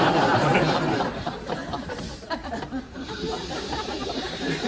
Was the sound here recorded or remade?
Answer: remade